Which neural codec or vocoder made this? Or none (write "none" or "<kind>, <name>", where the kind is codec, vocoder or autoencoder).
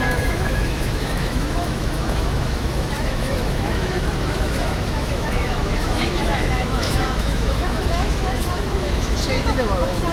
autoencoder, DAC-VAE